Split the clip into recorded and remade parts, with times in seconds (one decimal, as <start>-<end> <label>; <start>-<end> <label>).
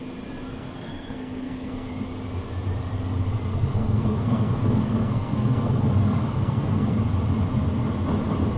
0.0-0.5 recorded; 0.5-1.9 remade; 1.9-3.5 recorded; 3.5-7.0 remade; 7.0-8.6 recorded